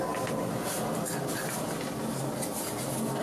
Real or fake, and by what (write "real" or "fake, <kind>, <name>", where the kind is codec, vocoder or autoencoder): real